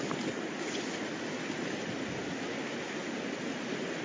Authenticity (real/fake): real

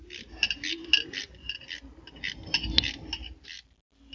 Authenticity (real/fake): real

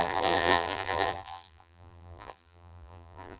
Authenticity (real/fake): fake